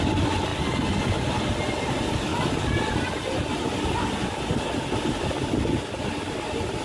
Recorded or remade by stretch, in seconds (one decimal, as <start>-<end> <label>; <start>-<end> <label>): 0.0-6.8 recorded